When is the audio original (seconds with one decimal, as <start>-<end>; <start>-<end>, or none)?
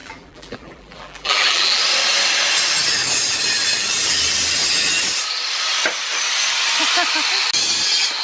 1.8-8.2